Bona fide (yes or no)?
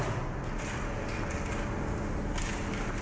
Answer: yes